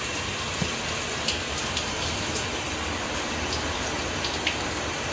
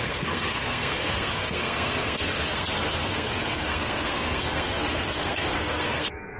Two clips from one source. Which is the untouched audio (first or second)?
first